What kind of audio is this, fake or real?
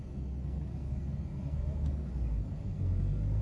fake